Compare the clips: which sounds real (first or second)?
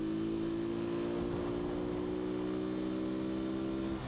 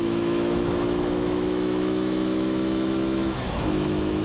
first